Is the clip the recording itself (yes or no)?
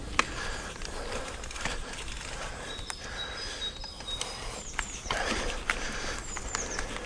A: yes